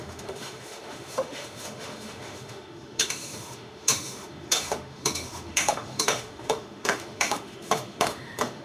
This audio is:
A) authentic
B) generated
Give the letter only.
B